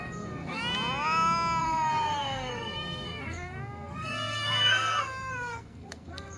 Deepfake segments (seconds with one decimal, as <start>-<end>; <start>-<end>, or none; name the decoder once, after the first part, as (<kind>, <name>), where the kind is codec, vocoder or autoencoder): 0.0-0.6 (codec, SNAC); 1.6-6.4